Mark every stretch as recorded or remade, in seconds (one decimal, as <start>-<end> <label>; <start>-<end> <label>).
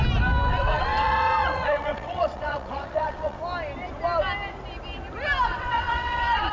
0.0-0.5 recorded; 0.5-3.4 remade; 3.4-5.5 recorded; 5.5-6.5 remade